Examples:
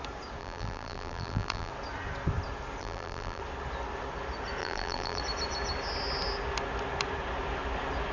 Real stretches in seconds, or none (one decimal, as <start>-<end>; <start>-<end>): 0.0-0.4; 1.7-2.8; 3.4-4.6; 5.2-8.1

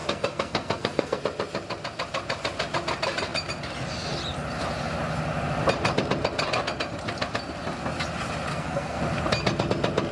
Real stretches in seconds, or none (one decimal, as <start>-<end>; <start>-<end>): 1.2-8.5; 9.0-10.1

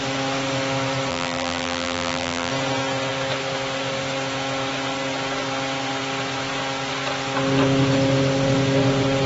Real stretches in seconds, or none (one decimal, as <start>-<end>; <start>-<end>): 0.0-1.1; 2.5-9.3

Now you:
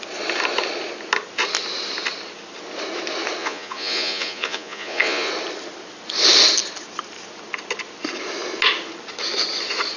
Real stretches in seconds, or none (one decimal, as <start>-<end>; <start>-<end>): 0.0-3.4; 5.3-10.0

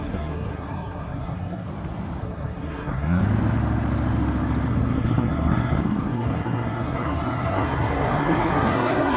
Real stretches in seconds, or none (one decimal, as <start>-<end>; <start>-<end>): 1.7-2.2; 3.2-4.7

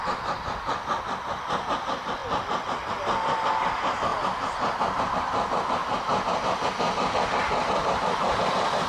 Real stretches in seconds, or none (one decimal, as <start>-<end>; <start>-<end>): 0.0-8.9

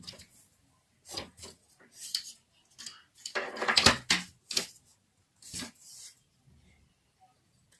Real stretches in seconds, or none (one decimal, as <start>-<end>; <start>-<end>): 0.0-7.8

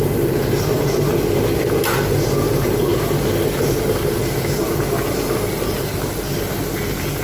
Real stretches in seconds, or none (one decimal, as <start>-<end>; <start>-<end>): 0.0-7.2